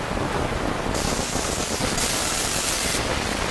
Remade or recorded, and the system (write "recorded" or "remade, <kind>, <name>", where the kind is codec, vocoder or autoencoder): recorded